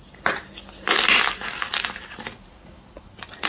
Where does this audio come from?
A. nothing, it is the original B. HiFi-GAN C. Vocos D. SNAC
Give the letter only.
A